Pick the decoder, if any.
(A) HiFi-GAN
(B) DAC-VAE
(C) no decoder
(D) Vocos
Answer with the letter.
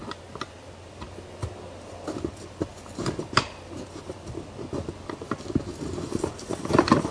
C